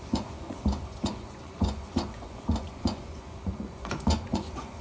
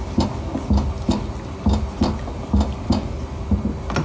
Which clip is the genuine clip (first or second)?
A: second